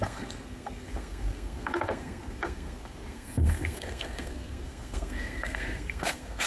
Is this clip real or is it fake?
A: fake